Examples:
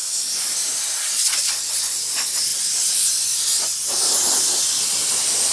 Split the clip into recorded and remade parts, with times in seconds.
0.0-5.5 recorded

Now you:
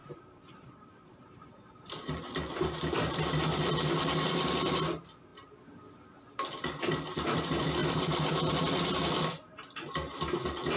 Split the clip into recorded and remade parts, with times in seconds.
0.0-2.2 remade; 2.2-10.8 recorded